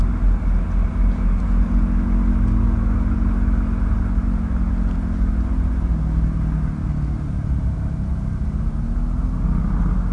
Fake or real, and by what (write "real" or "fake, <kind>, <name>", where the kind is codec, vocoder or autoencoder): real